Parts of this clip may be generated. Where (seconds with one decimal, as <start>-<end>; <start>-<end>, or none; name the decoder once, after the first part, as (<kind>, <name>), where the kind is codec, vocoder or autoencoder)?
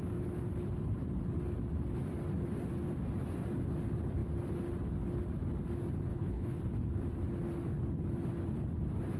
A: 6.1-6.6 (codec, HILCodec)